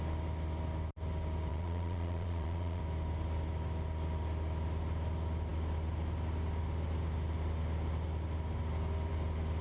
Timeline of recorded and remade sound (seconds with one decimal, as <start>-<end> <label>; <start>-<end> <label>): 0.0-1.5 recorded; 1.5-2.8 remade; 2.8-9.6 recorded